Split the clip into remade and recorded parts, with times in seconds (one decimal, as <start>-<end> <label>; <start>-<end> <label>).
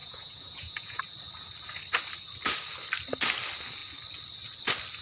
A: 0.0-1.0 remade; 1.0-5.0 recorded